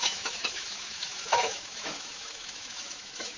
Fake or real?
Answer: fake